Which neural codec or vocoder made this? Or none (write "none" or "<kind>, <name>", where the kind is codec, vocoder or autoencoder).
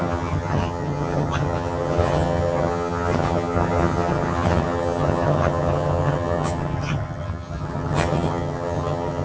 vocoder, HiFi-GAN